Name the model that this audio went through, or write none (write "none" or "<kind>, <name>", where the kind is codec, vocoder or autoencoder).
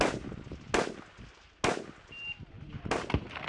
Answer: none